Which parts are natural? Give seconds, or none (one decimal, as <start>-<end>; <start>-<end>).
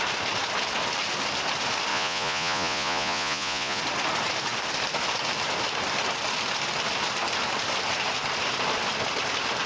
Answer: 0.0-1.9; 3.8-9.7